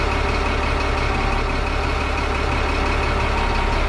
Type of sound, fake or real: real